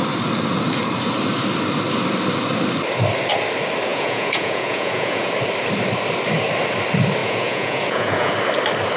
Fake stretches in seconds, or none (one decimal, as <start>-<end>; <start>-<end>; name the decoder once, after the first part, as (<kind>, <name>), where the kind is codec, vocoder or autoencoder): 3.9-5.3 (vocoder, Vocos); 7.2-8.3